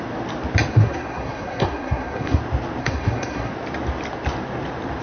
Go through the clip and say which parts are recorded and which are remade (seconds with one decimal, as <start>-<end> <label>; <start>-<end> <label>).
0.0-0.7 recorded; 0.7-2.4 remade; 2.4-2.8 recorded; 2.8-3.5 remade; 3.5-5.0 recorded